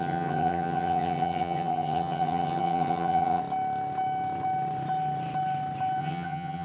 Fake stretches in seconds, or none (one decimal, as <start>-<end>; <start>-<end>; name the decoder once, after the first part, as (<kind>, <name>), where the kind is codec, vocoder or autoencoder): 0.0-3.4 (vocoder, HiFi-GAN); 6.0-6.6